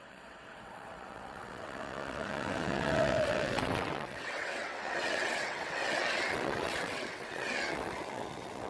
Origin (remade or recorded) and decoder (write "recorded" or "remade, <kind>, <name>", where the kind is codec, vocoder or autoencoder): remade, vocoder, WaveNeXt